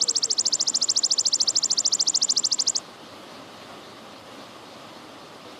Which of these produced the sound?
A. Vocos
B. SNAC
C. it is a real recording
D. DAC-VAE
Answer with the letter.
C